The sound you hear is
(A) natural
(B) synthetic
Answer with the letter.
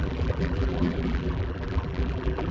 B